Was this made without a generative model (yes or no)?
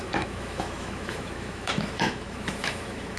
no